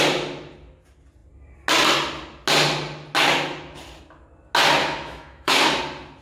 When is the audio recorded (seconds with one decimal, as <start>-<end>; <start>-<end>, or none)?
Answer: 0.0-4.8; 5.8-6.2